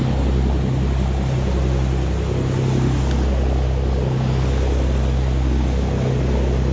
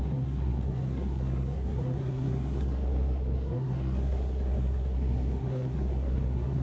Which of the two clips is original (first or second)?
first